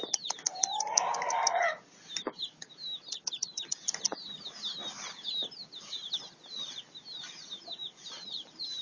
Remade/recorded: recorded